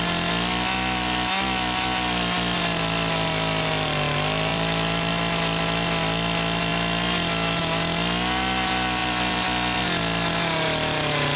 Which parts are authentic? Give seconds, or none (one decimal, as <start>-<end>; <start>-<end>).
0.0-4.5; 5.1-9.0; 9.8-11.4

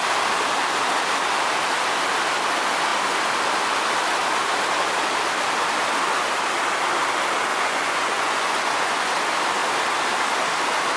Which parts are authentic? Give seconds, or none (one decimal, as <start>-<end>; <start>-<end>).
0.0-7.5; 9.1-11.0

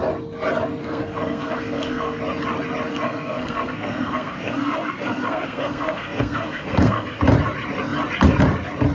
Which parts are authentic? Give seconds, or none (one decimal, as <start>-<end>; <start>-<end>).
0.0-0.8; 2.2-2.9; 7.2-8.9